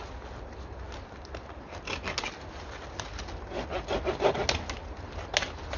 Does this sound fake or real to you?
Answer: real